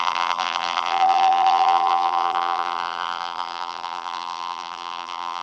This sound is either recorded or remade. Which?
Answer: remade